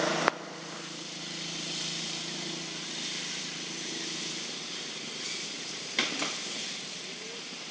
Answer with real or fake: real